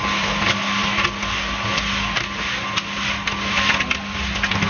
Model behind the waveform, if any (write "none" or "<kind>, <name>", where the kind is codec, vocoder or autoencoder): none